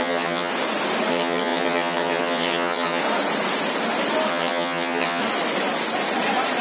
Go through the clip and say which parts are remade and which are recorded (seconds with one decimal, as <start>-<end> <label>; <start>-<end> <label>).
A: 0.0-0.5 remade; 0.5-1.1 recorded; 1.1-3.0 remade; 3.0-4.3 recorded; 4.3-5.2 remade; 5.2-6.6 recorded